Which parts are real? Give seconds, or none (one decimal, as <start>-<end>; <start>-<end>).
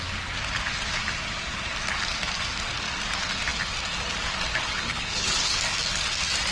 0.0-4.5; 5.6-6.5